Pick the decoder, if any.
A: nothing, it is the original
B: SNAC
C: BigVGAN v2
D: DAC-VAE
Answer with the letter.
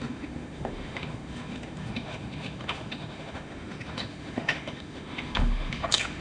D